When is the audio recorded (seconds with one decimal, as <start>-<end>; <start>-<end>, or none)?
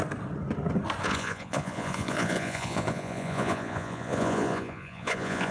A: 0.0-1.0